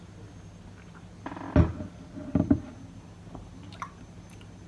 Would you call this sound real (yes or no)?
yes